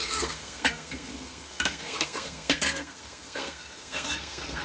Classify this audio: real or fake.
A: fake